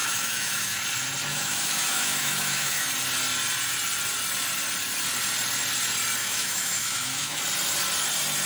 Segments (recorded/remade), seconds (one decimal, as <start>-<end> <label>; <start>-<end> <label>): 0.0-0.8 remade; 0.8-1.3 recorded; 1.3-2.9 remade; 2.9-6.2 recorded; 6.2-7.4 remade; 7.4-8.5 recorded